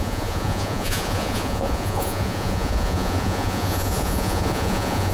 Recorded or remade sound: remade